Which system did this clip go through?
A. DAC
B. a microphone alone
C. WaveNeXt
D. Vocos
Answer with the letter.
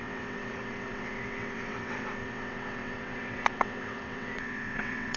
C